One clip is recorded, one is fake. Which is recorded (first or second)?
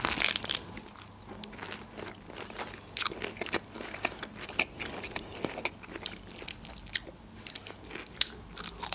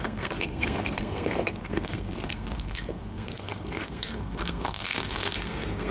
first